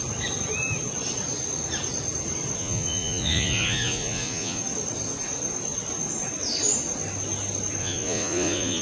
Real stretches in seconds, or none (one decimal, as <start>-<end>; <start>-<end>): 0.0-2.6; 4.6-7.8